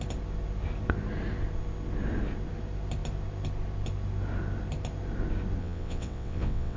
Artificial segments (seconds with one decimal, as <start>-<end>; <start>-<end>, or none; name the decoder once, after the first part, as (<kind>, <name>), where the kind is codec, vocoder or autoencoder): 5.6-6.8 (vocoder, WaveNeXt)